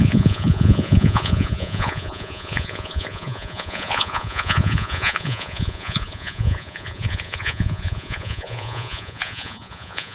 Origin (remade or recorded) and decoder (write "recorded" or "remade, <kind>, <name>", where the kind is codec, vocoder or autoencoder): remade, vocoder, Vocos